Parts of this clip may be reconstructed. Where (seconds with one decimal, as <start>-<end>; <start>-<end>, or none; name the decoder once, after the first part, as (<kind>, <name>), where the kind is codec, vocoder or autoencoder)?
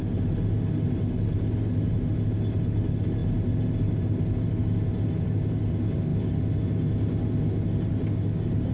none